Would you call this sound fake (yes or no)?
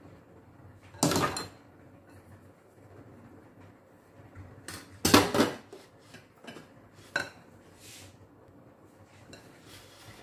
no